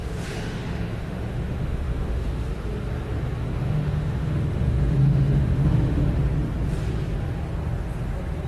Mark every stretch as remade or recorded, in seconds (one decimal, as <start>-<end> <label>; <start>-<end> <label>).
0.0-2.5 remade; 2.5-3.5 recorded; 3.5-6.2 remade; 6.2-8.5 recorded